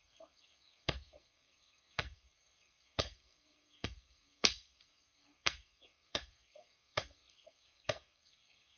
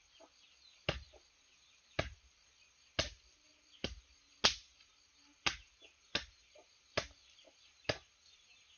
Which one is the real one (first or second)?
second